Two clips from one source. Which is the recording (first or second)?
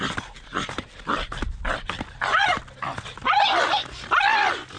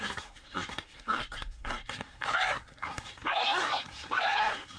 first